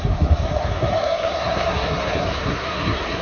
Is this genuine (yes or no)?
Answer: no